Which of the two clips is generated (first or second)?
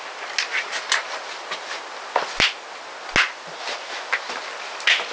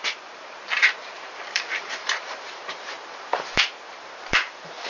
second